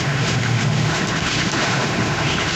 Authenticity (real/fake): fake